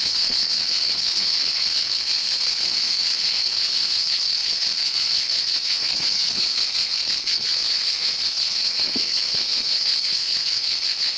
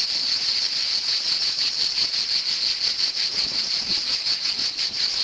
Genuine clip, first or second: second